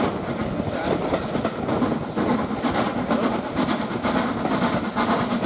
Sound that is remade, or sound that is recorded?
recorded